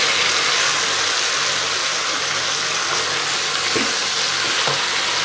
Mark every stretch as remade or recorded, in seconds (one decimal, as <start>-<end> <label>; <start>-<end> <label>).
0.0-5.2 recorded